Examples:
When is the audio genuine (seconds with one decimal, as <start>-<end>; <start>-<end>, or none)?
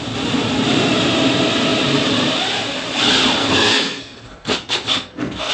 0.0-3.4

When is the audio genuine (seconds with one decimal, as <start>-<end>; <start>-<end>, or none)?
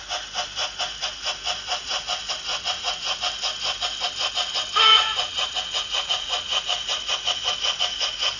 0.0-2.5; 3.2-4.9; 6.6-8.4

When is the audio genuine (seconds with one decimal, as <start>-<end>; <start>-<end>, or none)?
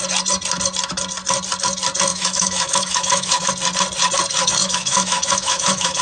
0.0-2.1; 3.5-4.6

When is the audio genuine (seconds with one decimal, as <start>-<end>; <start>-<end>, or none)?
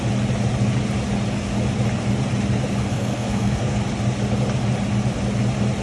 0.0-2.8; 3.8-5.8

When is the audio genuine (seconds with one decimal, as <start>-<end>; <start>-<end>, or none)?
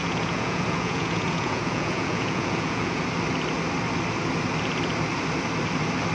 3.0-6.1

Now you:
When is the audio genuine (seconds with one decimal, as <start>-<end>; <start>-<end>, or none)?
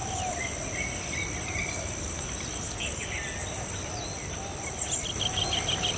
0.0-6.0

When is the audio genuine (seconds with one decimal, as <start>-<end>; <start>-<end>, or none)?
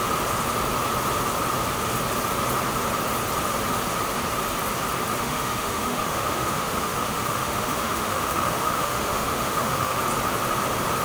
0.0-5.2; 10.0-11.0